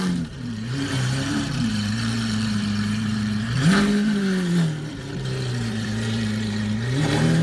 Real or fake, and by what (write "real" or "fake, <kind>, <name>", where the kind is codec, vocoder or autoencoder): fake, vocoder, BigVGAN v2